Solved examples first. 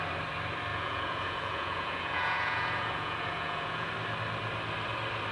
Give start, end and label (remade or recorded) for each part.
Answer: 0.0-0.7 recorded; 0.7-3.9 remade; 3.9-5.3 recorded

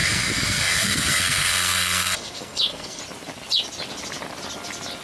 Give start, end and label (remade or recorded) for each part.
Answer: 0.0-3.0 remade; 3.0-5.0 recorded

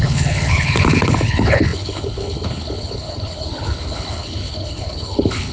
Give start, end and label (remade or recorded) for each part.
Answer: 0.0-5.5 remade

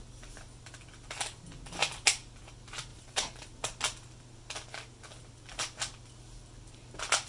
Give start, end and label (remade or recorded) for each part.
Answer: 0.0-2.9 recorded; 2.9-3.8 remade; 3.8-7.3 recorded

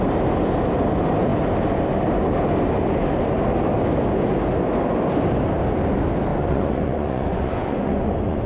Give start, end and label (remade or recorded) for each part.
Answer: 0.0-6.3 recorded; 6.3-8.5 remade

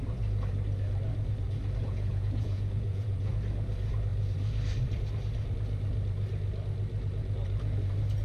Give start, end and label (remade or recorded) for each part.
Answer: 0.0-1.8 recorded; 1.8-3.3 remade; 3.3-8.2 recorded

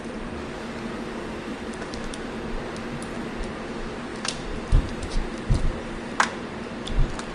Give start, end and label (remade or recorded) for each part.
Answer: 0.0-1.5 recorded; 1.5-2.6 remade; 2.6-4.1 recorded; 4.1-7.3 remade